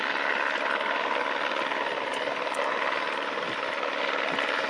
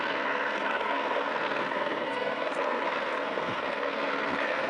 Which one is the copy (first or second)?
second